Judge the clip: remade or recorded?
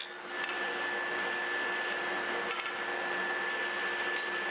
recorded